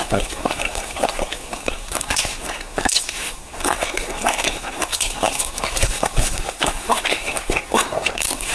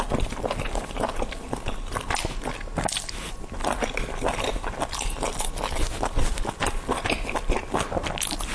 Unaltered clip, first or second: second